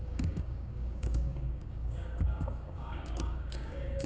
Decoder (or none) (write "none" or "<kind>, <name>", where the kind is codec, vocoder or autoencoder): codec, DAC